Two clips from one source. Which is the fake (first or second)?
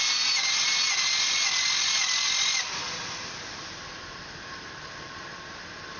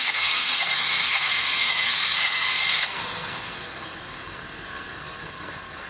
second